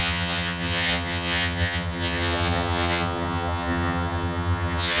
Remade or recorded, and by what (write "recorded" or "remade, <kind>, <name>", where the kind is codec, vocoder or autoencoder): remade, vocoder, HiFi-GAN